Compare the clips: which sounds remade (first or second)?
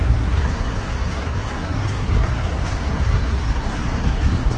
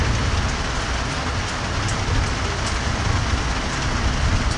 first